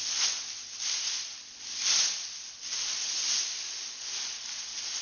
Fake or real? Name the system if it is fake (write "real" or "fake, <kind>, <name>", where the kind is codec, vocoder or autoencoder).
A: real